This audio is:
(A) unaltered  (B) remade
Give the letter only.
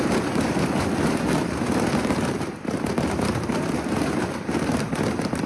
B